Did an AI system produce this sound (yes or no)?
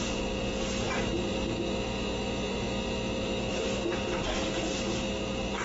no